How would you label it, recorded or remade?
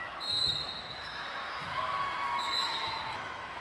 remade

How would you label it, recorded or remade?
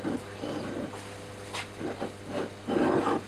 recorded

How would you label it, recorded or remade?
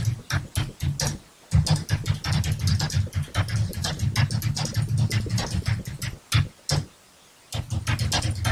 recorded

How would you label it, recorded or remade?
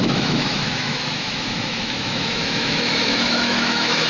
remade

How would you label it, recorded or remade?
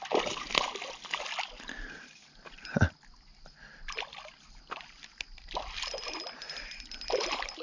recorded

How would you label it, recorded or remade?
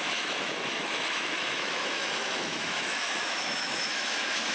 remade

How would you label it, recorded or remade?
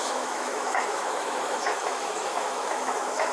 remade